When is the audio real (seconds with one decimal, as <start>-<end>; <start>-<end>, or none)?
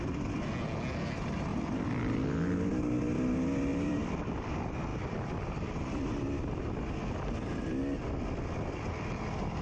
0.0-1.5; 2.5-3.7; 4.4-4.9; 6.6-9.6